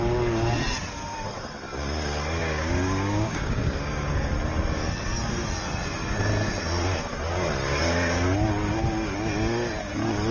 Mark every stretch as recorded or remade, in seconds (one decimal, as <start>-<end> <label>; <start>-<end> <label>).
0.0-2.4 recorded; 2.4-4.3 remade; 4.3-10.3 recorded